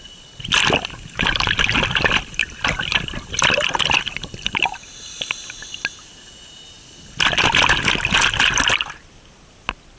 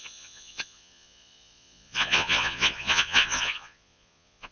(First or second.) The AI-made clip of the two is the second